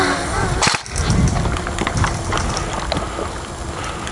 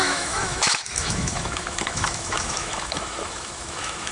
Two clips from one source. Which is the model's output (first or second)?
second